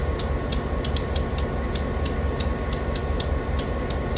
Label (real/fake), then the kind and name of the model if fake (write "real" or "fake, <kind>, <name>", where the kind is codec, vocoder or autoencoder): real